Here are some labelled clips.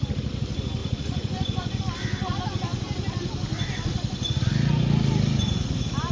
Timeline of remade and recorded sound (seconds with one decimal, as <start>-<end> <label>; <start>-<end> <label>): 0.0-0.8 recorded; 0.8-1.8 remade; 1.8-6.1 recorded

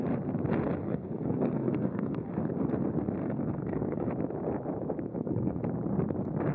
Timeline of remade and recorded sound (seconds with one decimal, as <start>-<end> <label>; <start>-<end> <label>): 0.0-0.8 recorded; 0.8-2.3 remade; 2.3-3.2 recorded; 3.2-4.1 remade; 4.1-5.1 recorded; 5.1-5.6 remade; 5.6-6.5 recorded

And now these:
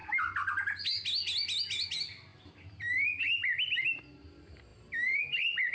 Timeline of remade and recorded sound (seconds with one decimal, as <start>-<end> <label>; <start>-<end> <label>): 0.0-5.7 recorded

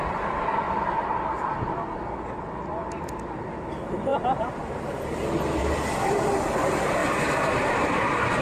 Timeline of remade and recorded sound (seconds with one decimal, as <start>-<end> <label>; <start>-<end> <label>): 0.0-8.4 recorded

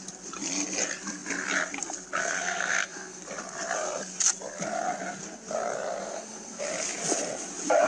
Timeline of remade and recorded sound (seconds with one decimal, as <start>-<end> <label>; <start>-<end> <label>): 0.0-2.2 recorded; 2.2-3.2 remade; 3.2-6.0 recorded; 6.0-6.6 remade; 6.6-7.9 recorded